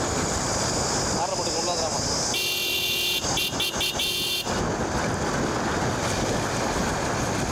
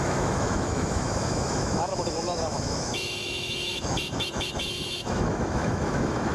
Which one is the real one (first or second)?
first